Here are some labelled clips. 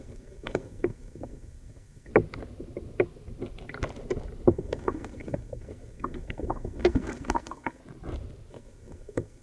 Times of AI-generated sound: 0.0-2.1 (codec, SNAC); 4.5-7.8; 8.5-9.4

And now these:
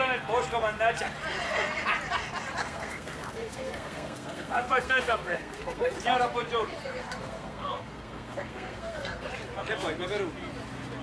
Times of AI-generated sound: 2.6-6.0 (codec, SNAC); 6.7-9.3

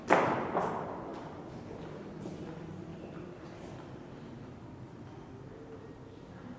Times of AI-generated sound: none